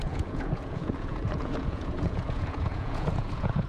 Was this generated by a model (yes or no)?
yes